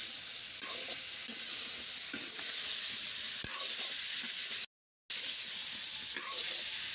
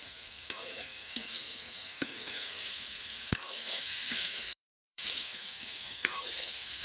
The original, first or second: first